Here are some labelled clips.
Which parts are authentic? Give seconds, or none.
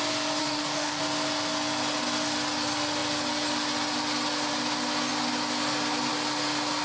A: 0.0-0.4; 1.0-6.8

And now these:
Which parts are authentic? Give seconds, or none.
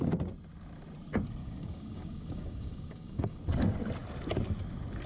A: 0.0-1.4; 3.4-5.1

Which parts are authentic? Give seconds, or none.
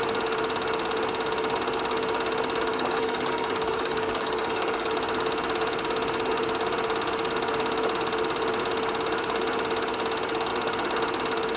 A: 0.0-2.7; 4.9-11.6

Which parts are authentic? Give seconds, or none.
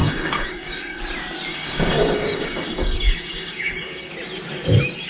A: 1.0-1.5; 4.1-5.1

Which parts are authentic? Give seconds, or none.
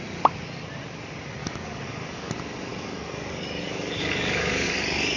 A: 0.0-1.4; 2.3-2.7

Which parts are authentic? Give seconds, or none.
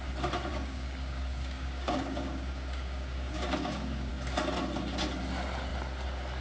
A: 0.0-0.5; 4.1-6.4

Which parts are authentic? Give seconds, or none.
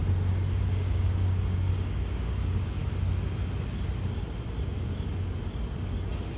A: 0.0-0.6; 2.8-6.4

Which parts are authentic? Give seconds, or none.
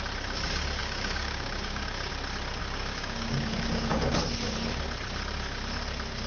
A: 0.0-0.8; 2.1-2.6; 4.2-6.3